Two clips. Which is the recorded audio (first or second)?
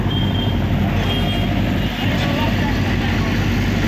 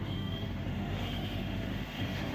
first